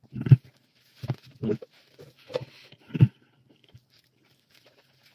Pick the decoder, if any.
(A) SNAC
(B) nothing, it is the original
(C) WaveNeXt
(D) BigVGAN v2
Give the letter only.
D